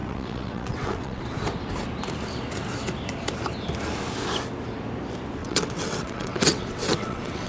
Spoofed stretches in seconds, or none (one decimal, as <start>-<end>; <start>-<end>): 0.0-1.2; 5.4-7.5